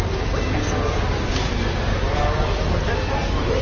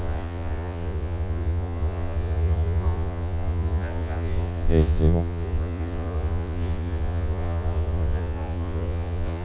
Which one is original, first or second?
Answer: first